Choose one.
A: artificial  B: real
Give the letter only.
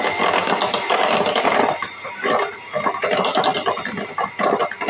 B